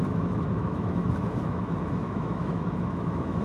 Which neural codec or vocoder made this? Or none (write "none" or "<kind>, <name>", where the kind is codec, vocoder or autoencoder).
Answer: autoencoder, DAC-VAE